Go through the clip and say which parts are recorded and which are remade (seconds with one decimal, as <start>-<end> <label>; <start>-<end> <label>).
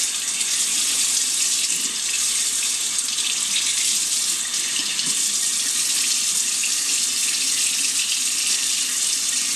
0.0-9.6 recorded